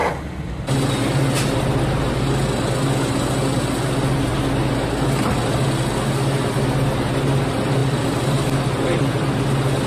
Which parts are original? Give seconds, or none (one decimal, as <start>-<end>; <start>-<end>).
0.0-7.8; 9.3-9.9